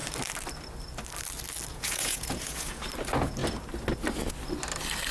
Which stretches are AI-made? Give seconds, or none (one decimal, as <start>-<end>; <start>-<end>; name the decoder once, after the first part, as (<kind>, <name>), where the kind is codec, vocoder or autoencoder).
1.7-2.8 (vocoder, Vocos)